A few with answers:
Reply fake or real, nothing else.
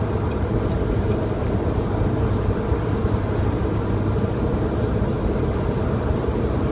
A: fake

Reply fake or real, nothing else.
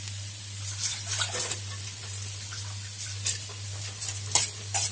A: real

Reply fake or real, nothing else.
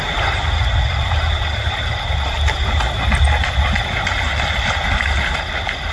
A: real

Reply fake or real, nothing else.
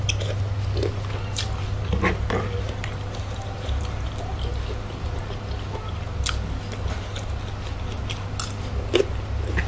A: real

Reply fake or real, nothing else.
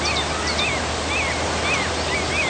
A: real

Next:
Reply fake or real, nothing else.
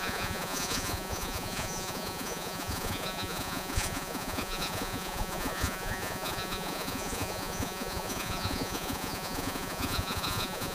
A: fake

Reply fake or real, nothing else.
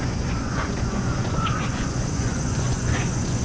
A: fake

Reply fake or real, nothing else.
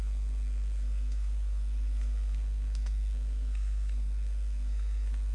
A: fake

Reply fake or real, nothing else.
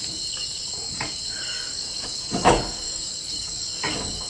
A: fake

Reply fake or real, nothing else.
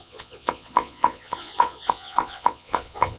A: fake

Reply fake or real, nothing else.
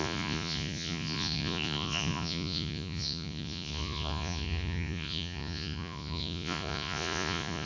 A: fake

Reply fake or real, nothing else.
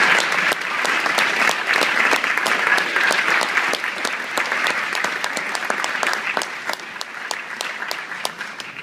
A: real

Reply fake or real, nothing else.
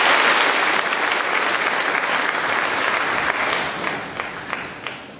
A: real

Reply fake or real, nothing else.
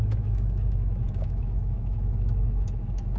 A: fake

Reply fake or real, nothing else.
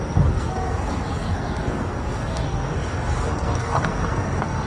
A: fake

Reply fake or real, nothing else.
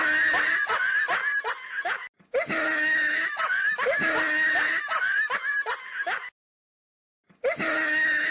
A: real